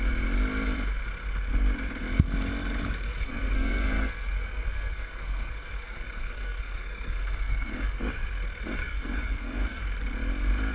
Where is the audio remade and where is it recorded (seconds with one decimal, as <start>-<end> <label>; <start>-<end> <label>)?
0.0-3.1 recorded; 3.1-8.0 remade; 8.0-8.8 recorded; 8.8-9.8 remade; 9.8-10.7 recorded